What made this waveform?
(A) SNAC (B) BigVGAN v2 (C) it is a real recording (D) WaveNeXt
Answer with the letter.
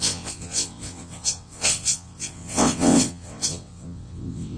D